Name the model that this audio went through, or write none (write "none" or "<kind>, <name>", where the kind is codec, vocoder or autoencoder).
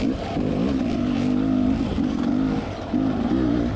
none